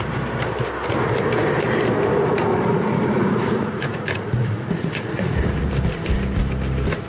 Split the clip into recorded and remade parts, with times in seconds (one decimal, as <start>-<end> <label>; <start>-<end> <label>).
0.0-2.5 recorded; 2.5-5.7 remade; 5.7-7.1 recorded